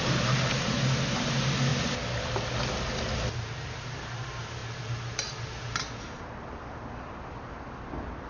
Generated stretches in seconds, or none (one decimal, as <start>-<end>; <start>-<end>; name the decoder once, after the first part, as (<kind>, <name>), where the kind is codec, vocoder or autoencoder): none